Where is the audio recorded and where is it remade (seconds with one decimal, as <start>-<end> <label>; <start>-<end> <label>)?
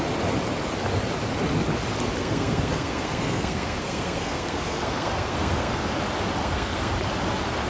0.0-2.2 recorded; 2.2-5.9 remade; 5.9-6.4 recorded; 6.4-6.9 remade; 6.9-7.7 recorded